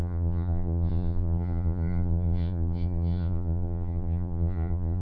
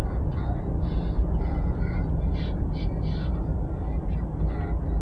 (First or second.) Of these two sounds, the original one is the second